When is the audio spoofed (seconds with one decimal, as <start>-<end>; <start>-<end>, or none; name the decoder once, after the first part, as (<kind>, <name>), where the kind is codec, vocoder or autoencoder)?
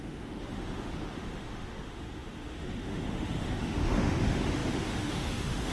0.0-5.7 (autoencoder, DAC-VAE)